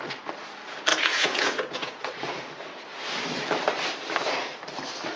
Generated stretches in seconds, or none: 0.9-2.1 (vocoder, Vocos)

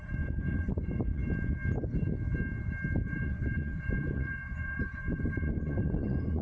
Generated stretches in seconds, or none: 0.0-1.2 (vocoder, Vocos); 3.1-6.4